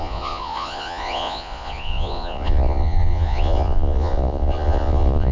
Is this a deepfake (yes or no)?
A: yes